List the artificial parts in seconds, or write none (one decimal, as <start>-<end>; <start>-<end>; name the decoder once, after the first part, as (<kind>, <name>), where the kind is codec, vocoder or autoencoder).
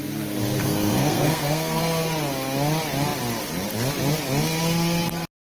0.6-1.8 (codec, SNAC)